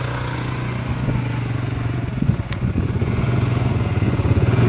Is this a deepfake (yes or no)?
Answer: yes